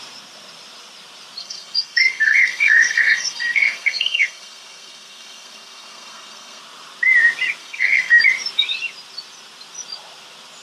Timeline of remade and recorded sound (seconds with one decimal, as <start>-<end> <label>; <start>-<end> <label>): 0.0-1.4 recorded; 1.4-6.6 remade; 6.6-7.6 recorded; 7.6-8.2 remade; 8.2-10.6 recorded